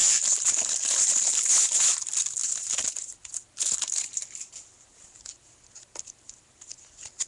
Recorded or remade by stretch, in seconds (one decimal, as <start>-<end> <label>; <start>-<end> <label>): 0.0-1.3 remade; 1.3-7.3 recorded